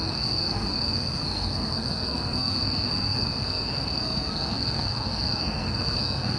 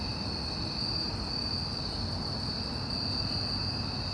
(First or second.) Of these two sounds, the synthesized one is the first